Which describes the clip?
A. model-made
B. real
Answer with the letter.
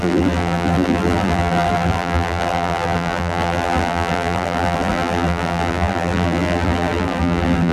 A